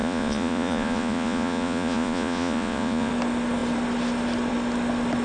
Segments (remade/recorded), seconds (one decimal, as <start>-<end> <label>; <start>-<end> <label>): 0.0-3.1 remade; 3.1-5.2 recorded